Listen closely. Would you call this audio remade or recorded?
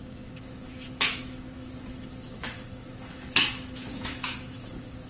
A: remade